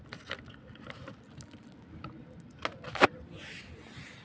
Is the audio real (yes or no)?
yes